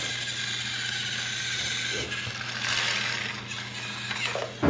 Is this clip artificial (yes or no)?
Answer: no